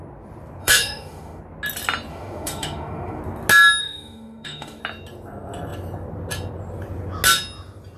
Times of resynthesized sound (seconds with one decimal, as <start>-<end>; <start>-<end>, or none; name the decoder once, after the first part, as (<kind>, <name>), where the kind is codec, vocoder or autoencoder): 0.6-1.4 (autoencoder, DAC-VAE); 2.1-3.2; 3.8-4.8